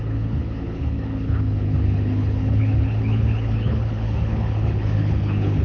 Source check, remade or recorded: remade